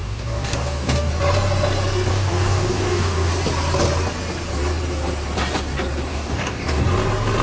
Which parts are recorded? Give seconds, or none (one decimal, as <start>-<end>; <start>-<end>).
1.1-2.1; 3.3-6.1; 6.8-7.4